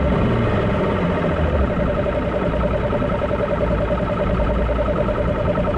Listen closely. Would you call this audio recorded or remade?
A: recorded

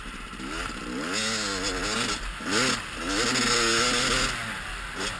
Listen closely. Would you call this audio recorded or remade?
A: recorded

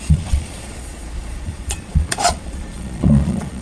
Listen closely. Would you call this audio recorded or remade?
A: remade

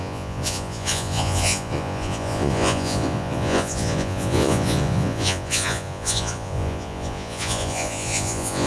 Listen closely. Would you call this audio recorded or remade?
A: remade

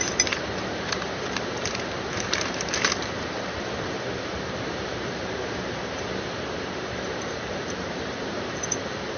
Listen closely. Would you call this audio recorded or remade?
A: remade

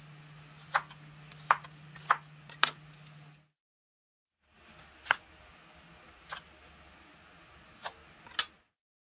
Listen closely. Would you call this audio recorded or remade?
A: recorded